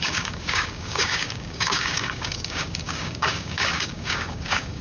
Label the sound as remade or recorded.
remade